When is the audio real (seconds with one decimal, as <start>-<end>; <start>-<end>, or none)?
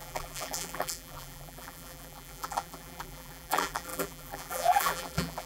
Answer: none